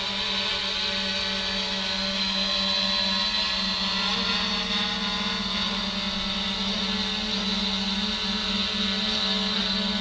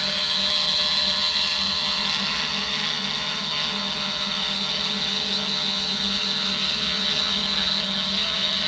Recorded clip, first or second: first